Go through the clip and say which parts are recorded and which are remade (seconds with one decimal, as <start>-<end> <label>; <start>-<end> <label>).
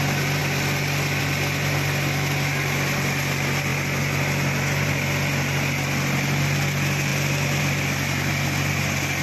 0.0-9.2 recorded